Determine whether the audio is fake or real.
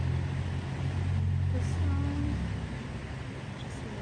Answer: real